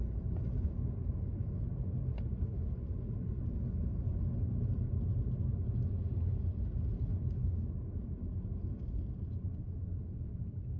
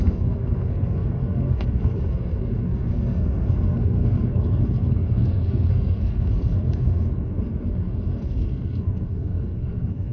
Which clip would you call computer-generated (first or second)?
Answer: second